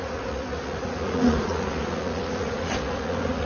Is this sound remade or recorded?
remade